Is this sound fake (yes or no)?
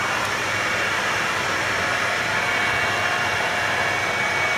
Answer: no